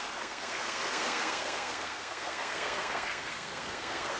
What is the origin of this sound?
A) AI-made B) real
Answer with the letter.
A